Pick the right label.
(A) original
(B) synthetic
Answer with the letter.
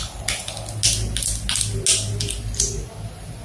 A